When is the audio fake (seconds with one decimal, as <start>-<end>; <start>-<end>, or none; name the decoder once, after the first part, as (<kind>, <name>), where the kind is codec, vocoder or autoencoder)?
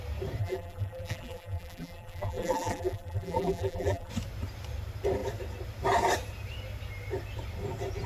0.4-4.1 (vocoder, BigVGAN v2)